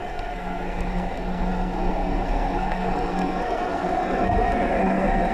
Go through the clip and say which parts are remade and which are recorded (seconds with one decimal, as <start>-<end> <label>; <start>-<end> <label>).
0.0-5.3 remade